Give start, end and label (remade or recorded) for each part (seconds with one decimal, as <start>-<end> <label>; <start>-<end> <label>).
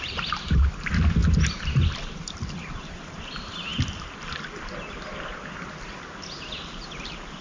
0.0-7.4 recorded